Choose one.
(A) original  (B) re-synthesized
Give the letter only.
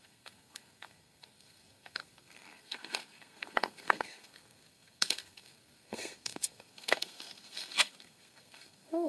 B